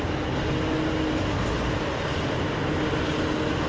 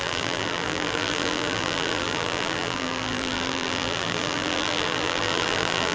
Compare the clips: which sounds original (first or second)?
first